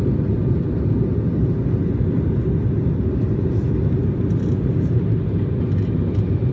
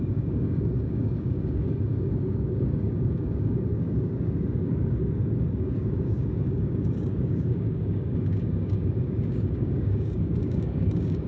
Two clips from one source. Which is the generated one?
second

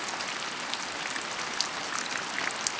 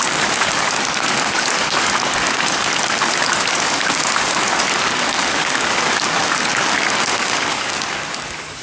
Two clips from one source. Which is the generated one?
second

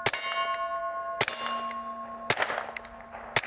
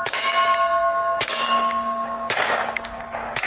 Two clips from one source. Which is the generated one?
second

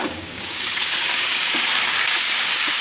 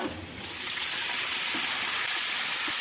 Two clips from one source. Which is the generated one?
first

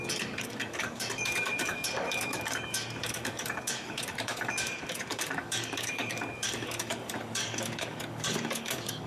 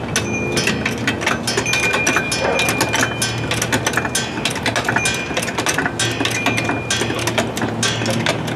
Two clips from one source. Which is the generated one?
first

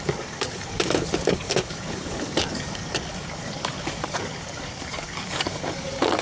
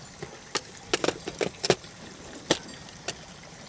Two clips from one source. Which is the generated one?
first